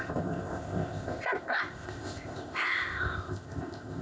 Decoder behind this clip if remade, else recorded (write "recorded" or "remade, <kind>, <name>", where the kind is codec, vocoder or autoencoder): remade, codec, ZipCodec